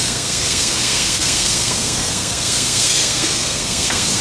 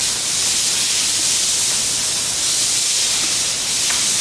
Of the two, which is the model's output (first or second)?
first